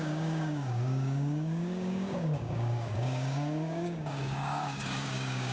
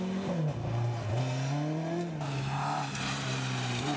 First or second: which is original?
second